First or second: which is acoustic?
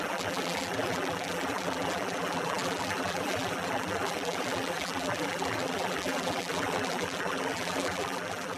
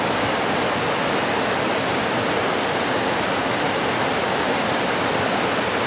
second